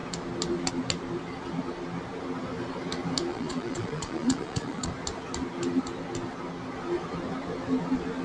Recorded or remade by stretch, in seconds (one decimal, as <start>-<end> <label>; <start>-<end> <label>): 0.0-3.3 recorded; 3.3-4.9 remade; 4.9-8.2 recorded